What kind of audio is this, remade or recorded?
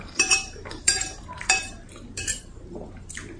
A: remade